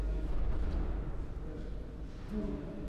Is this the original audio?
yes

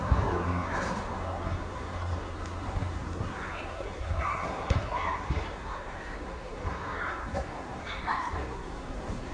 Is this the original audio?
no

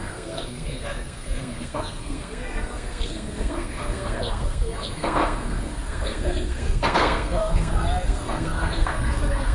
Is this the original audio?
no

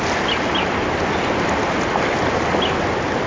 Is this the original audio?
yes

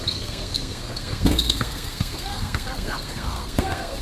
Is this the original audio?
no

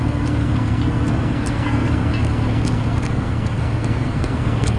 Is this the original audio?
no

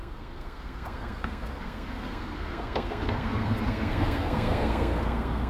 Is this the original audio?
no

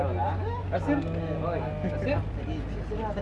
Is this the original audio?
yes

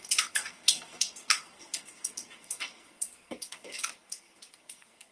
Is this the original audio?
no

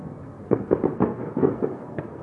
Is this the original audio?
no